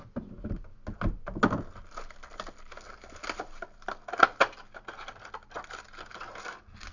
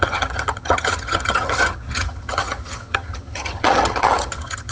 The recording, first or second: first